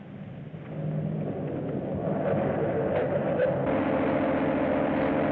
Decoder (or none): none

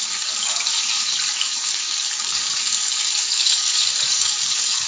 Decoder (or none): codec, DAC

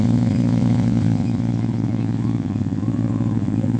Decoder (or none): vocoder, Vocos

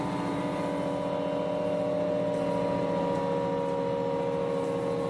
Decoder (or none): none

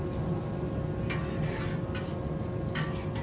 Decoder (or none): none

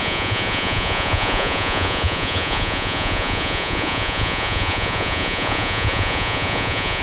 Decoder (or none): vocoder, Vocos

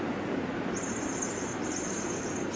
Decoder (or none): vocoder, BigVGAN v2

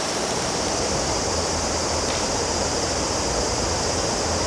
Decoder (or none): none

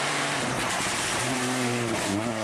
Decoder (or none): vocoder, BigVGAN v2